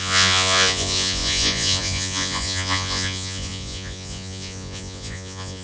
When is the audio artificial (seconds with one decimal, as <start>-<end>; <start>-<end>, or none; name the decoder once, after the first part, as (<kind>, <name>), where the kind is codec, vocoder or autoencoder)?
0.0-5.6 (vocoder, Vocos)